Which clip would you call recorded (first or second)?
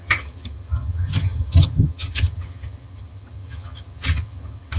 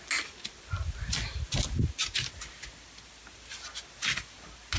second